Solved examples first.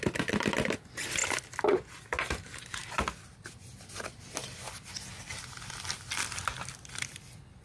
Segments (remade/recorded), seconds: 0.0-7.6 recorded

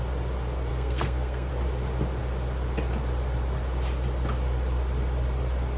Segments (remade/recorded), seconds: 0.0-0.7 recorded; 0.7-1.5 remade; 1.5-5.8 recorded